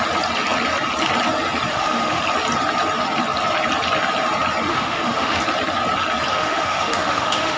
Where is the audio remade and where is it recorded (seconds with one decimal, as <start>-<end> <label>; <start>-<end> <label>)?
0.0-1.7 recorded; 1.7-2.2 remade; 2.2-4.7 recorded; 4.7-5.4 remade; 5.4-6.3 recorded; 6.3-7.6 remade